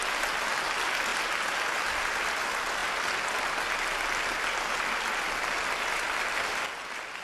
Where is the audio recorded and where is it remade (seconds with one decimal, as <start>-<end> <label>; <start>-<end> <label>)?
0.0-7.2 recorded